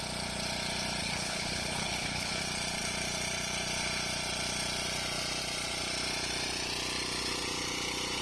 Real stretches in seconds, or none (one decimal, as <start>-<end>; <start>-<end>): 0.0-1.0; 2.4-8.2